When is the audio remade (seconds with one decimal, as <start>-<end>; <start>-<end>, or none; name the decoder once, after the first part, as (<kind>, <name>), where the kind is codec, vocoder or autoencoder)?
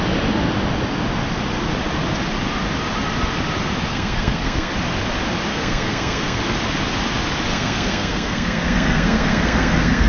3.9-4.7 (codec, SNAC); 5.5-6.4; 7.5-10.1